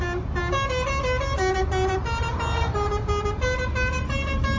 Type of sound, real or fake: real